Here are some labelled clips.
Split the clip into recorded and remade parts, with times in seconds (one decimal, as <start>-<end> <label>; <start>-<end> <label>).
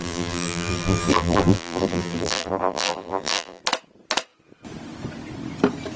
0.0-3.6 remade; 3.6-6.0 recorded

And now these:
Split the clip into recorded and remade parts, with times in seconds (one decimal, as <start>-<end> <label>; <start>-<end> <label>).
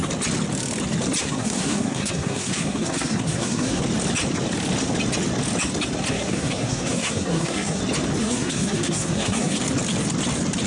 0.0-1.2 recorded; 1.2-3.8 remade; 3.8-6.1 recorded; 6.1-7.8 remade; 7.8-8.2 recorded; 8.2-9.6 remade; 9.6-10.7 recorded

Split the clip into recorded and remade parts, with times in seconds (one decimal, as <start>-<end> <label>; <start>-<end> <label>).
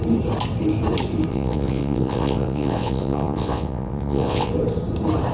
0.0-1.3 recorded; 1.3-4.5 remade; 4.5-5.3 recorded